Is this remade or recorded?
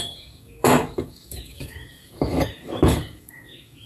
remade